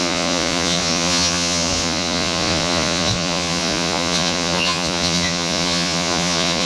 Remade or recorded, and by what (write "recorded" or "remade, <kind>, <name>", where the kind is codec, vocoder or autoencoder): remade, vocoder, Vocos